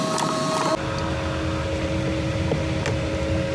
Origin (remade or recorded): recorded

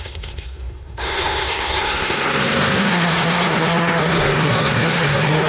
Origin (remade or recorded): remade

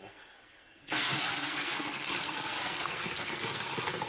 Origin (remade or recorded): remade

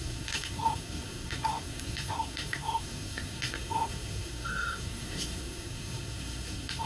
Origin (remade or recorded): remade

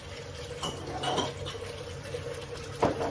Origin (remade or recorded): recorded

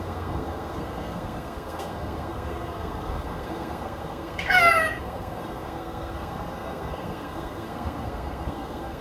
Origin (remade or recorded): remade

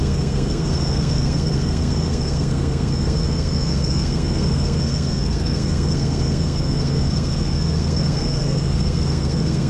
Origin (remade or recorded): remade